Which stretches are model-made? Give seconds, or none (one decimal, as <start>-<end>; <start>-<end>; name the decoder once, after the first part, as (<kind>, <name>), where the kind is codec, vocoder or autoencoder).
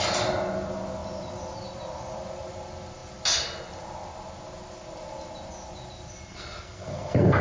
6.3-7.4 (codec, SNAC)